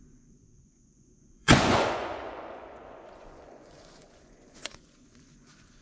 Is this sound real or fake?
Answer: fake